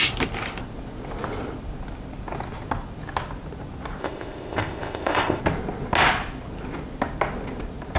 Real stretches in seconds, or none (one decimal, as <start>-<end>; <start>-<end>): 0.0-4.0; 5.4-8.0